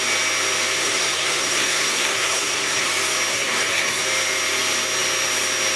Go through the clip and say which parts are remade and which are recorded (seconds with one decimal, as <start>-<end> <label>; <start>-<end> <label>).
0.0-0.8 recorded; 0.8-2.9 remade; 2.9-3.3 recorded; 3.3-4.0 remade; 4.0-5.8 recorded